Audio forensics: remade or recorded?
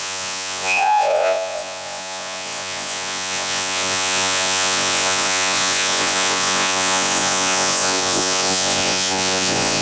remade